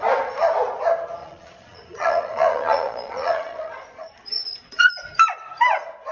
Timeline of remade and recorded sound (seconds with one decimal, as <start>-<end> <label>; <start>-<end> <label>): 0.0-1.2 recorded; 1.2-4.9 remade; 4.9-6.1 recorded